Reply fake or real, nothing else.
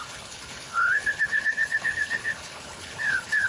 fake